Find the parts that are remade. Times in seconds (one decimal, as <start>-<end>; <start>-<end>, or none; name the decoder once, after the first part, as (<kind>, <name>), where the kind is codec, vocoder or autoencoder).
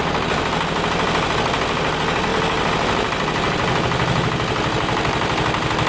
none